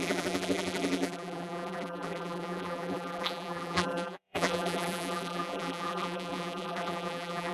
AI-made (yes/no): yes